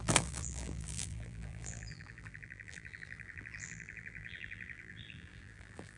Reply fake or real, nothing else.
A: fake